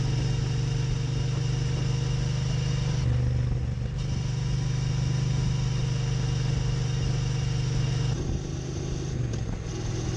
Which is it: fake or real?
real